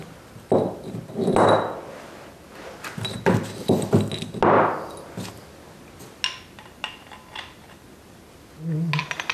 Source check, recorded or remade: recorded